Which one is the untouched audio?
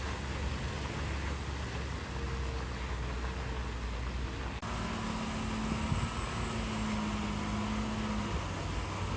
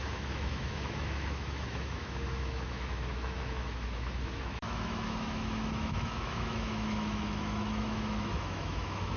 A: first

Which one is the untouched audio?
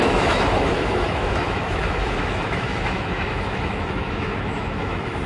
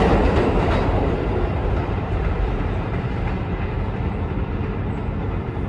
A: second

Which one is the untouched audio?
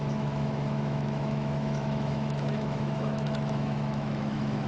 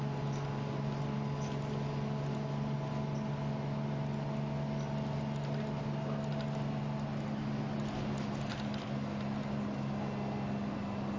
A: second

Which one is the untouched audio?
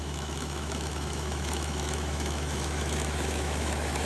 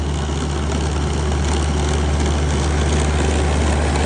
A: second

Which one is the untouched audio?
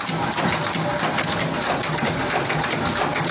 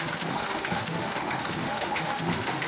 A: first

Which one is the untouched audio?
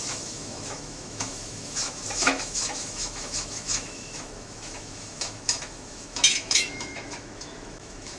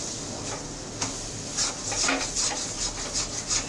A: second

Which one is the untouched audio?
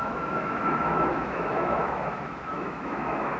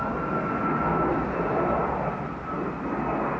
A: second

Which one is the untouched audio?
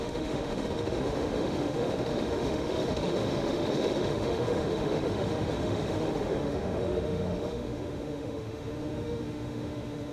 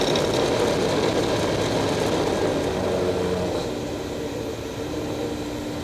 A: second